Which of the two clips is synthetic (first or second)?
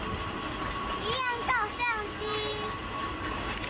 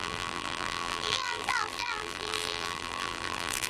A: second